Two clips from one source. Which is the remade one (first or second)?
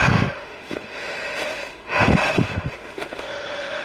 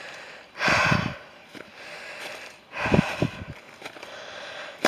first